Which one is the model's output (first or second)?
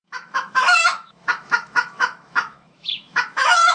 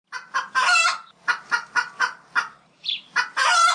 first